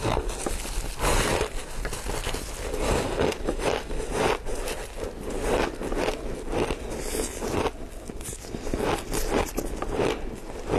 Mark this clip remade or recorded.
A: recorded